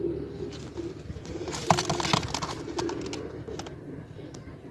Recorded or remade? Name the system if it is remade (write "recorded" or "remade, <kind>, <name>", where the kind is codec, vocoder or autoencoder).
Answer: recorded